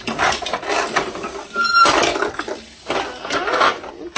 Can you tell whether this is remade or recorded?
recorded